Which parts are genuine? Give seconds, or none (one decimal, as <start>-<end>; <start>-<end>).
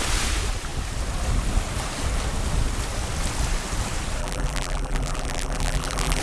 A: 0.0-4.2